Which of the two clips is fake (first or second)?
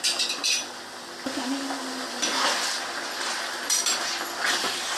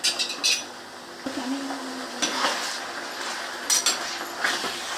first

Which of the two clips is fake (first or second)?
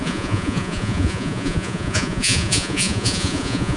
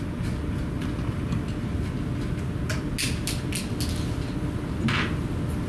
first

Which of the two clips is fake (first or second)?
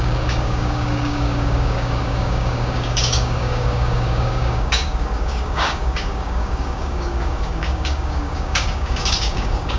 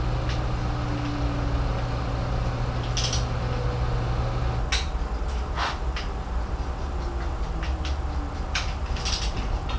first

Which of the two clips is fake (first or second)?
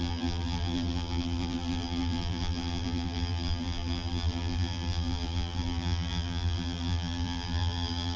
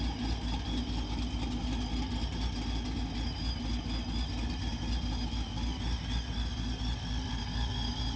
first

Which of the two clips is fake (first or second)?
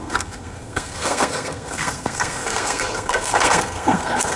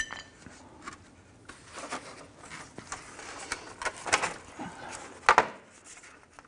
first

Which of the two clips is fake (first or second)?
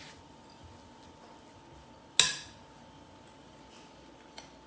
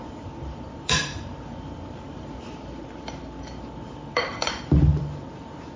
second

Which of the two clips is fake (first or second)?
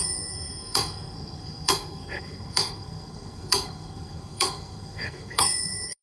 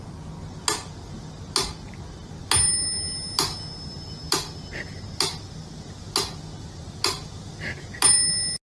first